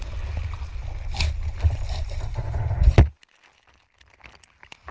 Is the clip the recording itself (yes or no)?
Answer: yes